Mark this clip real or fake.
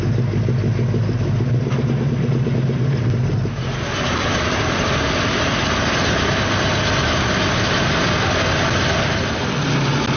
real